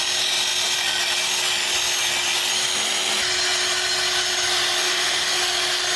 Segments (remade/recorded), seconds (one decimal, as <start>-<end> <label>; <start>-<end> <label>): 0.0-4.8 recorded; 4.8-5.4 remade; 5.4-6.0 recorded